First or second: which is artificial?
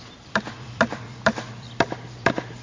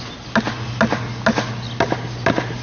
first